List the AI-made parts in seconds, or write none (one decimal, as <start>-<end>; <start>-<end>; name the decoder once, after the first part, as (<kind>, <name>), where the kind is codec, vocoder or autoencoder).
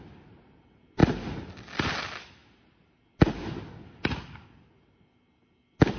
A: none